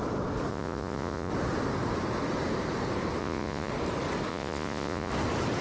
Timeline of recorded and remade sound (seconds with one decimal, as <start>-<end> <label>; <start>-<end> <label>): 0.0-0.5 recorded; 0.5-1.3 remade; 1.3-3.2 recorded; 3.2-3.7 remade; 3.7-4.3 recorded; 4.3-5.1 remade; 5.1-5.6 recorded